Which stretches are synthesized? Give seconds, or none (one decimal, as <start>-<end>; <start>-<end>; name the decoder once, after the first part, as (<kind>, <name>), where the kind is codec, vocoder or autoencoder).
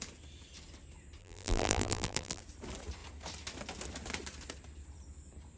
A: 1.2-2.4 (vocoder, BigVGAN v2)